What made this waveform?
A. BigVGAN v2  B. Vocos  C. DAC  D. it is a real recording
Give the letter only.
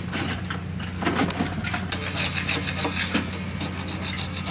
D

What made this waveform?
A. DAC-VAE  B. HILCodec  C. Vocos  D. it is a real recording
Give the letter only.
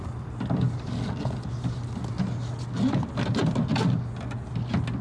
D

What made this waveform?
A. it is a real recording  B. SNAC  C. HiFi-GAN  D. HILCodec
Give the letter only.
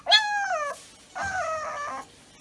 A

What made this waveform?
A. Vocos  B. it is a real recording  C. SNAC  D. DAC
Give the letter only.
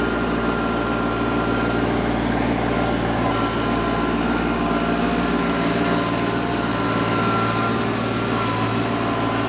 B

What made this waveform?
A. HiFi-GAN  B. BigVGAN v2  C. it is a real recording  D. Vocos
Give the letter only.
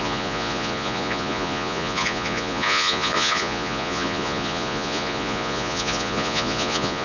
D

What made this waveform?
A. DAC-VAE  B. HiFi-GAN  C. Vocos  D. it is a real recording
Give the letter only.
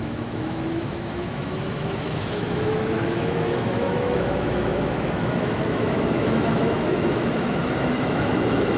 A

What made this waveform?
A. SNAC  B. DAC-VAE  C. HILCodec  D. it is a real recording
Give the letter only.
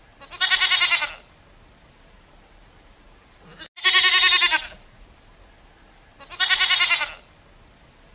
D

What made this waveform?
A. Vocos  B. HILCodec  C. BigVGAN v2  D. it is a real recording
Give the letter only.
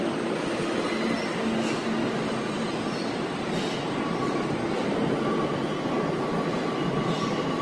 D